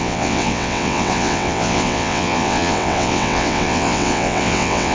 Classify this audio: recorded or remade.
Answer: remade